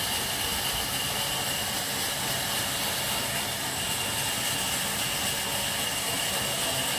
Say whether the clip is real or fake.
real